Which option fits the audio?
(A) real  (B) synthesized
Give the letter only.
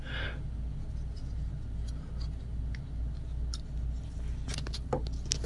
A